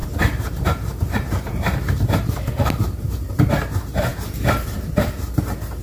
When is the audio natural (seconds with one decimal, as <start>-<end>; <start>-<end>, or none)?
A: 3.5-5.8